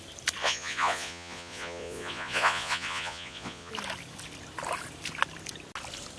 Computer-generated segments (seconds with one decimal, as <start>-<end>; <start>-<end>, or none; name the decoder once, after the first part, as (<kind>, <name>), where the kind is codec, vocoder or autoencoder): 0.4-3.7 (vocoder, Vocos)